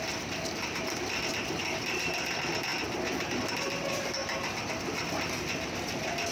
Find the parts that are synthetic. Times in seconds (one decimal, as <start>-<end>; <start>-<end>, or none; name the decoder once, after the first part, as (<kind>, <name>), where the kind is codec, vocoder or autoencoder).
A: 0.0-2.7 (vocoder, BigVGAN v2); 3.5-6.3